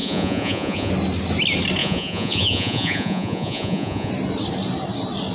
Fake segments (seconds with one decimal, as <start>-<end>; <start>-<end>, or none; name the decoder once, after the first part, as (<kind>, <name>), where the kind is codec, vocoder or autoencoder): 0.0-0.9 (vocoder, Vocos); 1.8-4.1